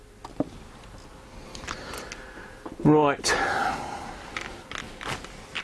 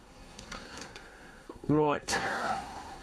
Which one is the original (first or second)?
first